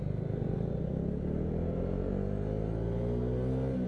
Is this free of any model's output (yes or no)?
yes